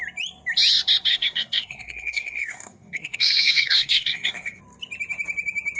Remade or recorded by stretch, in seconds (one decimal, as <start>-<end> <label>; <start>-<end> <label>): 0.0-1.1 recorded; 1.1-4.6 remade; 4.6-5.8 recorded